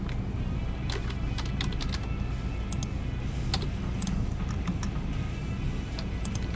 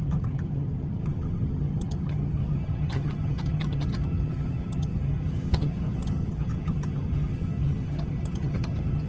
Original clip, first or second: first